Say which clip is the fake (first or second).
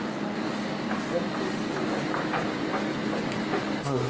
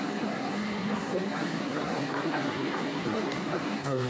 second